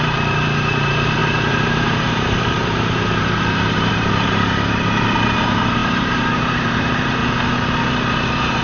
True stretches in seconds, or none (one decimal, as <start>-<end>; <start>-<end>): 7.2-8.6